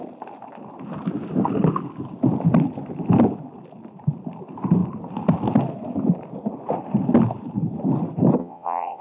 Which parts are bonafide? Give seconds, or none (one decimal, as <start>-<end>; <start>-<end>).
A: 0.0-8.4